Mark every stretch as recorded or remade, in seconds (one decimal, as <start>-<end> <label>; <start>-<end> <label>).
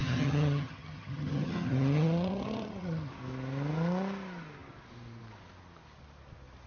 0.0-3.1 remade; 3.1-6.7 recorded